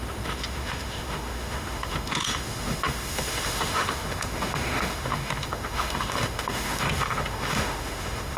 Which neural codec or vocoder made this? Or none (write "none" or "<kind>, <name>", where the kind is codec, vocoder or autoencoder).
autoencoder, DAC-VAE